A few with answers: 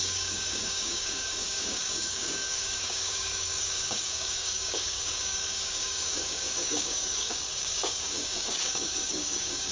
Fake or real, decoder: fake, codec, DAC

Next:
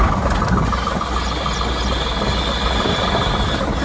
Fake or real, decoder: real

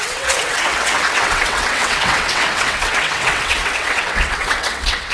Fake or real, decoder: fake, vocoder, WaveNeXt